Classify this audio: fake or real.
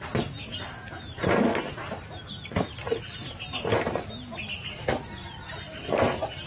real